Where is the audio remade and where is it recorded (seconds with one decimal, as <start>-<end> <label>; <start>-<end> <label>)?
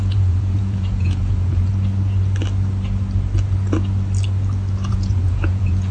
0.0-1.7 remade; 1.7-4.9 recorded; 4.9-5.9 remade